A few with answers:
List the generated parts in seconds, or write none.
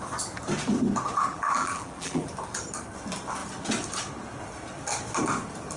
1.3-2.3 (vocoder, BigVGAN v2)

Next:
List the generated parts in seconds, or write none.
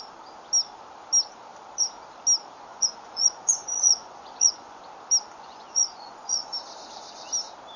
2.7-4.8 (vocoder, Vocos); 5.3-6.5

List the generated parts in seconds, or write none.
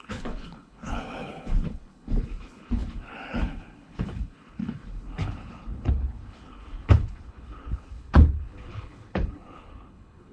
0.0-10.3 (codec, HILCodec)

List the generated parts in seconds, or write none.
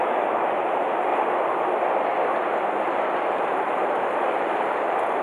0.0-1.1 (vocoder, BigVGAN v2); 3.4-5.2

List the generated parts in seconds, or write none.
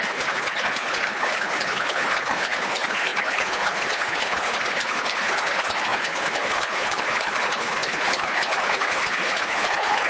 0.0-10.1 (codec, HILCodec)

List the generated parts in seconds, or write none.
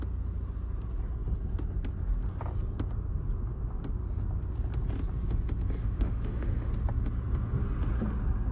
5.8-6.7 (autoencoder, DAC-VAE)